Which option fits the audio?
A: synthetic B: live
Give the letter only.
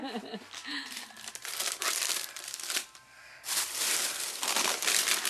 A